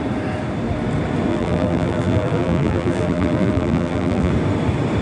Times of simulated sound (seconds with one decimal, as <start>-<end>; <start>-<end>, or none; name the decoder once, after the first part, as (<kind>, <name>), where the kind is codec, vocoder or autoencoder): 1.3-4.3 (vocoder, BigVGAN v2)